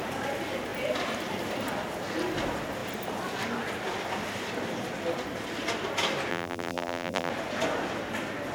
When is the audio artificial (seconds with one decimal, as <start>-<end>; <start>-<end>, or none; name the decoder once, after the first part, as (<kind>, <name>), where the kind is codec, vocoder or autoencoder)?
6.3-7.3 (vocoder, BigVGAN v2)